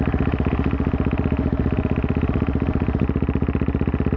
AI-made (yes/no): no